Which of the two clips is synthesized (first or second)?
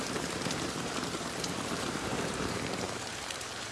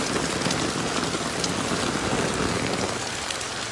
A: first